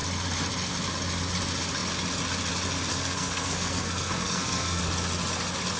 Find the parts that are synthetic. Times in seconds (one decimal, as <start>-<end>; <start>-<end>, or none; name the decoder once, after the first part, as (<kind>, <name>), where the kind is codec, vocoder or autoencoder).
2.9-4.8 (codec, SNAC)